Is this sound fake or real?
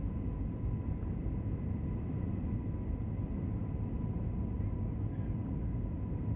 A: real